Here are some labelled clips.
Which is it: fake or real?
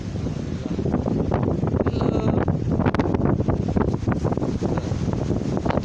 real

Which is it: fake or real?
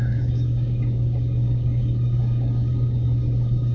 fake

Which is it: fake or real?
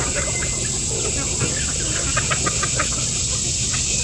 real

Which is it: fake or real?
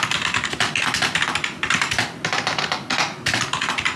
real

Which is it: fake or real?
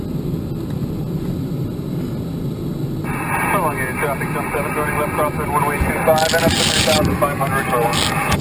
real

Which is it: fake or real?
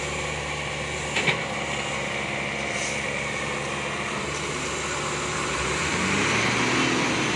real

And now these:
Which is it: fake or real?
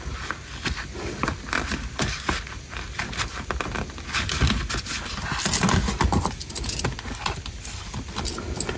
real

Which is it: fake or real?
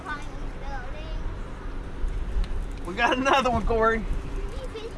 real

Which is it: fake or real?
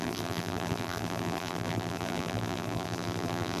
fake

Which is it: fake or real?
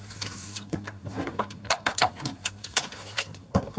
fake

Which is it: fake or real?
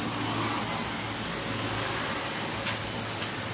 real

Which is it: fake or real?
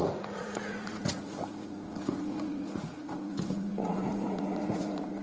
fake